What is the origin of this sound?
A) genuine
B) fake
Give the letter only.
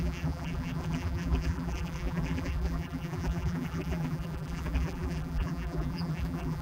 B